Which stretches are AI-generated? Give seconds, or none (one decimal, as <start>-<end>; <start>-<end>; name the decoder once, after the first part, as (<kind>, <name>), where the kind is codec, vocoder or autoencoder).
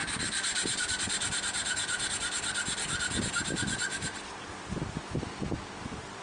none